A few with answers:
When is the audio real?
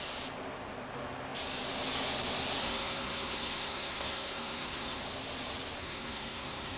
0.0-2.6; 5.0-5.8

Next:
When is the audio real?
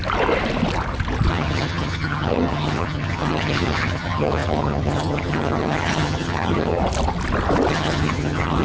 0.0-1.3; 6.8-7.7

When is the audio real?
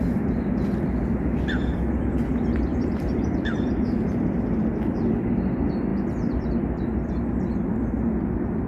0.0-2.7; 4.6-8.7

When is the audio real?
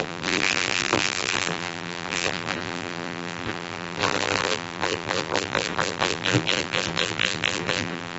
none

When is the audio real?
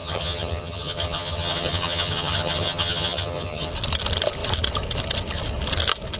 3.7-6.2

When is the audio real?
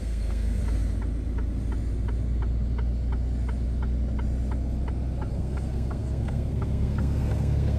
0.6-5.3